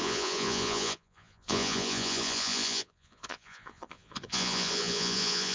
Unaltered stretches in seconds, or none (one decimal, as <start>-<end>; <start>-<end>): none